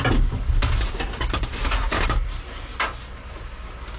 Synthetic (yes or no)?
no